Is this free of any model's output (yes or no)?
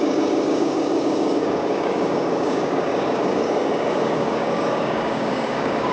no